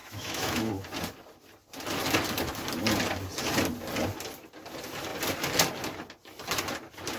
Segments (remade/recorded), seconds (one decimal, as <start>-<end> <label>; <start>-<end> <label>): 0.0-0.7 remade; 0.7-7.2 recorded